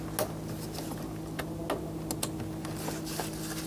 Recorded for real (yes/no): yes